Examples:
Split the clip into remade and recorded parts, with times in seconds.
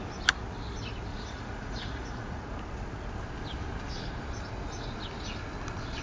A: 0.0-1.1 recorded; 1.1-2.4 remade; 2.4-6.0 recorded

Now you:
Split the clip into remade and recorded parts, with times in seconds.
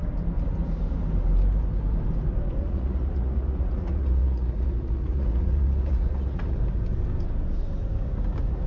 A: 0.0-2.6 recorded; 2.6-6.5 remade; 6.5-8.7 recorded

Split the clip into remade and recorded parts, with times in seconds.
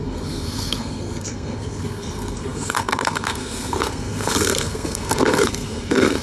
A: 0.0-6.2 remade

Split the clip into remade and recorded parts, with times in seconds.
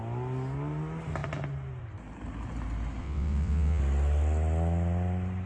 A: 0.0-3.0 recorded; 3.0-3.8 remade; 3.8-5.5 recorded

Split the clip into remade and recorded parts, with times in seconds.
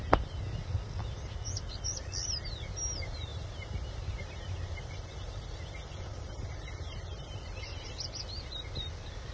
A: 0.0-3.3 recorded; 3.3-5.4 remade; 5.4-6.1 recorded; 6.1-8.2 remade; 8.2-9.3 recorded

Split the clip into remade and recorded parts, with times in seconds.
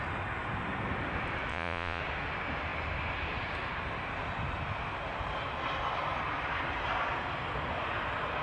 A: 0.0-1.5 recorded; 1.5-2.0 remade; 2.0-8.4 recorded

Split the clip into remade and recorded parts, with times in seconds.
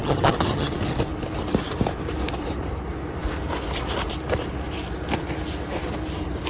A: 0.0-0.7 remade; 0.7-6.5 recorded